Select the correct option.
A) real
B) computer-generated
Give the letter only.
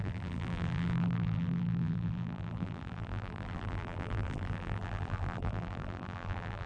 B